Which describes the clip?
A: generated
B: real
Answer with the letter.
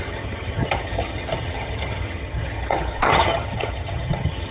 A